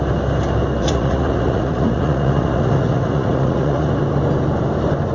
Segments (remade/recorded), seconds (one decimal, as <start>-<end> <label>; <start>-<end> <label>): 0.0-0.8 recorded; 0.8-3.9 remade; 3.9-5.1 recorded

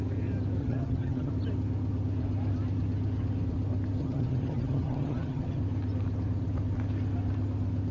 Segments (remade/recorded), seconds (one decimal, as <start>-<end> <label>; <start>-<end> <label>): 0.0-0.6 recorded; 0.6-1.3 remade; 1.3-4.0 recorded; 4.0-5.6 remade; 5.6-7.9 recorded

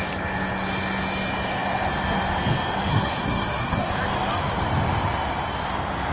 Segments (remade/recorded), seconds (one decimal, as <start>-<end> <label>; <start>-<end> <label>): 0.0-2.9 recorded; 2.9-3.9 remade; 3.9-6.1 recorded

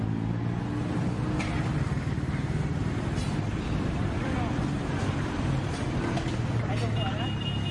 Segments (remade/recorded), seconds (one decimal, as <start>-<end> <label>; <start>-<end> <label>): 0.0-3.5 recorded; 3.5-7.1 remade; 7.1-7.7 recorded

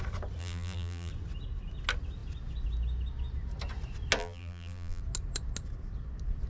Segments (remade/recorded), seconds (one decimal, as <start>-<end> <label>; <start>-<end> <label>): 0.0-0.4 recorded; 0.4-1.1 remade; 1.1-4.2 recorded; 4.2-5.0 remade; 5.0-6.5 recorded